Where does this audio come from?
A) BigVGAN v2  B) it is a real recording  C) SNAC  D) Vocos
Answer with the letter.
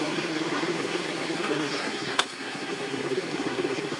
C